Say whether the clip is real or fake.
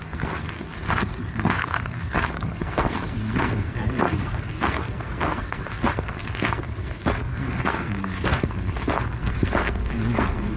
fake